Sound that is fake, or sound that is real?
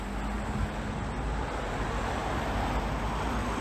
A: real